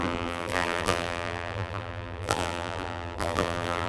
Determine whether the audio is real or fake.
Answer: fake